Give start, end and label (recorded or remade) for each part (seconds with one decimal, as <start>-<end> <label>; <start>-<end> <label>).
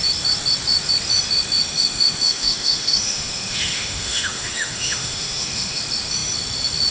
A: 0.0-1.7 recorded; 1.7-5.8 remade; 5.8-6.9 recorded